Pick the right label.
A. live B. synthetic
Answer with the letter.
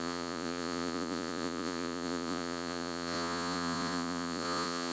B